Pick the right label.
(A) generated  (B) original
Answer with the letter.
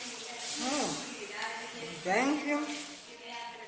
B